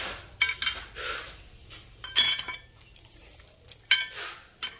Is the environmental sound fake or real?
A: real